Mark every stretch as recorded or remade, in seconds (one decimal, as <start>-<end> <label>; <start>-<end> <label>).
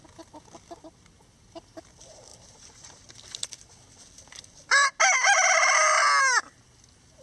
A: 0.0-7.2 recorded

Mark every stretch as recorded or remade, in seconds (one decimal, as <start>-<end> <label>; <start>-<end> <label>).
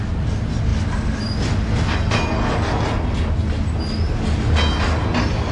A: 0.0-5.5 recorded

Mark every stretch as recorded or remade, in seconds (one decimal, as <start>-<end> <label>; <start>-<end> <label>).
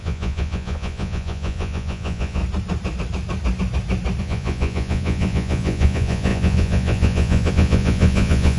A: 0.0-2.4 remade; 2.4-4.2 recorded; 4.2-8.6 remade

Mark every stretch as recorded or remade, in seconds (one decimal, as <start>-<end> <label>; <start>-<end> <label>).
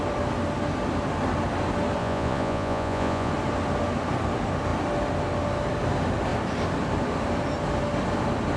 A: 0.0-2.0 recorded; 2.0-3.3 remade; 3.3-8.6 recorded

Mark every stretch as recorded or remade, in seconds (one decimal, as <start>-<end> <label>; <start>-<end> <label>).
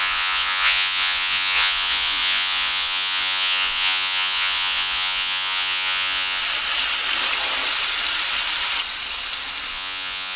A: 0.0-6.4 remade; 6.4-9.7 recorded; 9.7-10.4 remade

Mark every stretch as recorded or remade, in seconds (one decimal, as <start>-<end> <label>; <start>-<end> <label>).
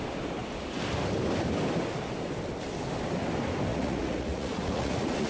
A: 0.0-3.7 recorded; 3.7-5.3 remade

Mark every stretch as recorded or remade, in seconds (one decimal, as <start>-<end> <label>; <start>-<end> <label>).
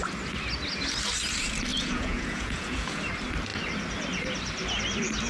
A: 0.0-1.7 recorded; 1.7-3.0 remade; 3.0-5.3 recorded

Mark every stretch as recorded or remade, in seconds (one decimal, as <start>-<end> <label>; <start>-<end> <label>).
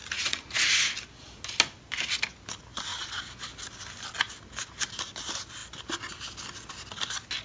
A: 0.0-0.9 remade; 0.9-7.4 recorded